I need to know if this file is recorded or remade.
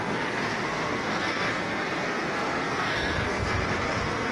remade